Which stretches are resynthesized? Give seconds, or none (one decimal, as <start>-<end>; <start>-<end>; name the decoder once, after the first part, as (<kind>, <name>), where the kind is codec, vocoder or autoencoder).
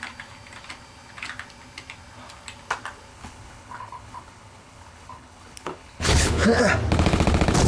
3.1-6.6 (codec, HILCodec)